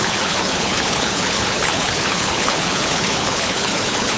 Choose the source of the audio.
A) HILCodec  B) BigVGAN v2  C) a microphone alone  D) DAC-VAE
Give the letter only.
A